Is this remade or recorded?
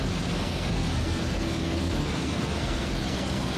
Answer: remade